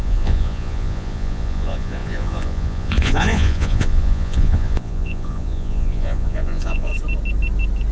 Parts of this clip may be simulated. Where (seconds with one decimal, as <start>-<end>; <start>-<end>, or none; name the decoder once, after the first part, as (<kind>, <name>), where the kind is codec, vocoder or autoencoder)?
0.0-6.9 (vocoder, Vocos)